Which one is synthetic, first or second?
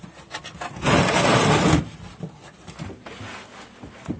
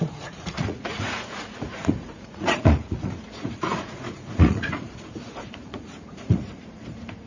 second